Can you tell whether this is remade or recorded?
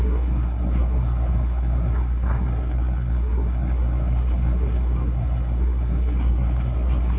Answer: remade